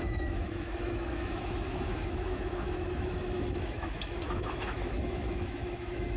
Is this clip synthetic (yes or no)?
yes